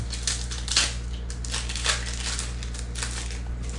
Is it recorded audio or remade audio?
recorded